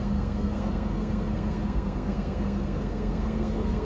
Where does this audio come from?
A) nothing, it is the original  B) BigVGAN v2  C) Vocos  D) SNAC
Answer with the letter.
D